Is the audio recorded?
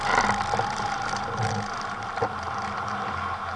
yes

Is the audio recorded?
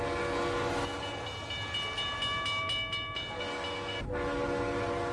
yes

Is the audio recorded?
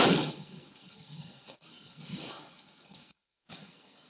no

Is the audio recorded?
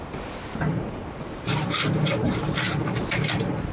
no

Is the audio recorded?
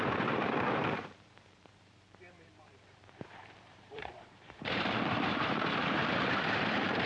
no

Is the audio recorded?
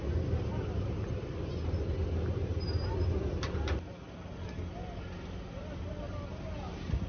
yes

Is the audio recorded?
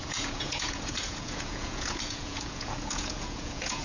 no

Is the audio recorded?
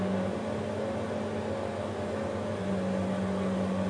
yes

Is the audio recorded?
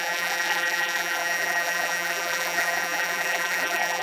no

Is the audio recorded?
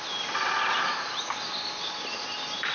yes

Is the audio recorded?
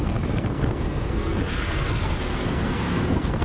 no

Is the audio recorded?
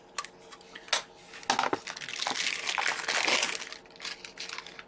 yes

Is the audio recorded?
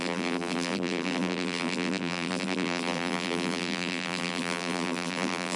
no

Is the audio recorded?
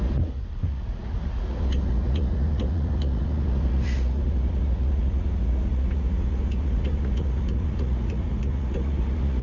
no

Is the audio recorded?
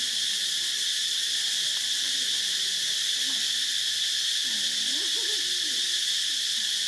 yes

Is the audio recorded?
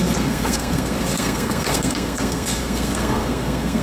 no